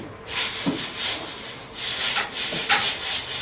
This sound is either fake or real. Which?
real